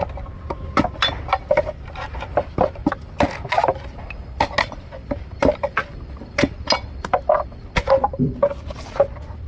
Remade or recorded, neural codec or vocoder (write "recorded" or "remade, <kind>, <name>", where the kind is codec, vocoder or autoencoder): recorded